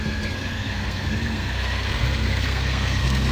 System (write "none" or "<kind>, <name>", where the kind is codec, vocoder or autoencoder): codec, SNAC